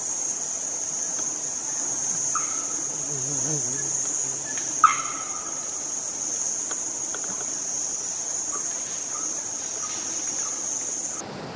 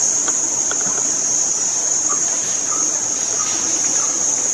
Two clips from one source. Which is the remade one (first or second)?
second